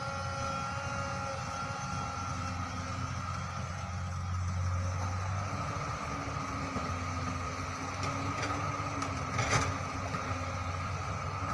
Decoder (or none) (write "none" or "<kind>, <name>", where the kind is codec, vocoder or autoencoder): none